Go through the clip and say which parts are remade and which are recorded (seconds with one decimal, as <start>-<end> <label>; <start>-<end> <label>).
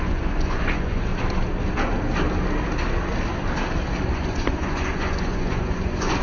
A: 0.0-1.1 remade; 1.1-4.1 recorded; 4.1-6.2 remade